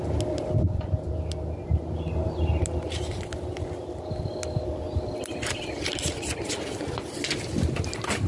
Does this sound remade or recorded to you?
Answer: recorded